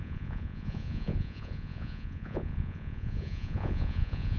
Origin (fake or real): fake